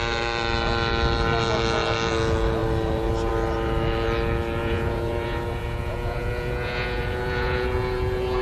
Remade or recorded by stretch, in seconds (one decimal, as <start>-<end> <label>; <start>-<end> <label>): 0.0-4.6 recorded; 4.6-8.4 remade